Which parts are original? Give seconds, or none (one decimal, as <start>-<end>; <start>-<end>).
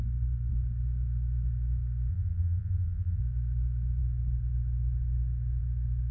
0.0-2.1; 3.2-6.1